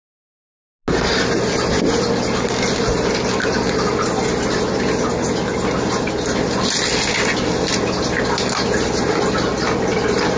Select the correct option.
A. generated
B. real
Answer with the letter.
B